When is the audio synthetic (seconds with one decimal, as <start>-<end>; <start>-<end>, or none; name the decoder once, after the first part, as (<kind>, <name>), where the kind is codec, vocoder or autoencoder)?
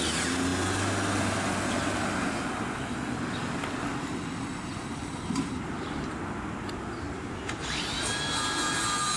none